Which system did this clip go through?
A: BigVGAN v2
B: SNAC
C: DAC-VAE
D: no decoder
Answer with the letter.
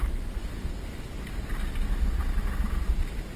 D